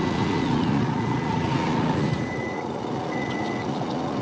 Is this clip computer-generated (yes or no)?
yes